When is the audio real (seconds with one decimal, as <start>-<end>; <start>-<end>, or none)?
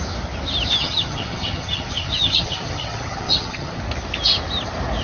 0.0-0.8; 3.8-5.0